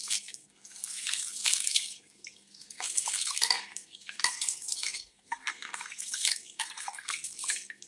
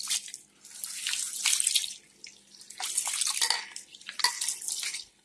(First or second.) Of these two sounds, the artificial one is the first